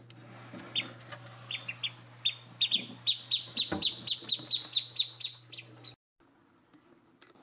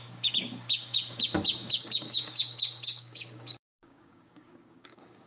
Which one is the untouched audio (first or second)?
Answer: first